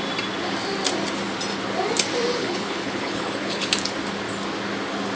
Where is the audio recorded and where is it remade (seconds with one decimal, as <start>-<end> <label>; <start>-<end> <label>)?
0.0-2.4 recorded; 2.4-3.7 remade; 3.7-5.2 recorded